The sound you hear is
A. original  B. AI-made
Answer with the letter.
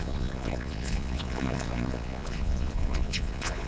B